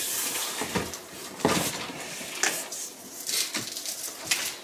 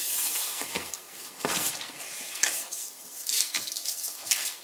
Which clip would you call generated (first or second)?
second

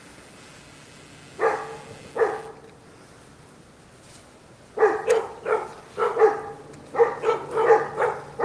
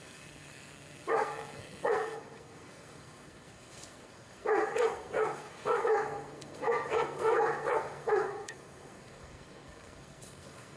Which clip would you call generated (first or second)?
second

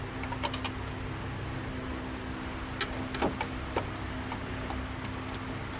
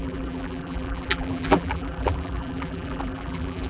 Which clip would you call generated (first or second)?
second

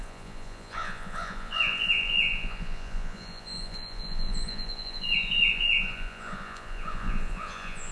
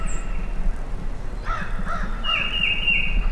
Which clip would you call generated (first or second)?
first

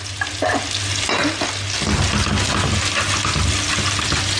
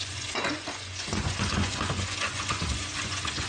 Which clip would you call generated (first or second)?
second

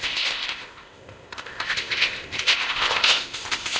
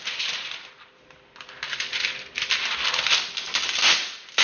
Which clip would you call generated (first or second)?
first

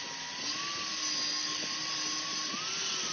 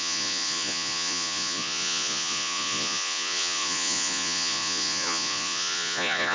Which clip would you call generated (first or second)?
second